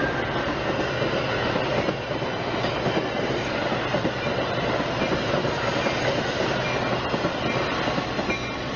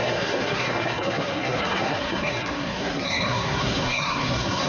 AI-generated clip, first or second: second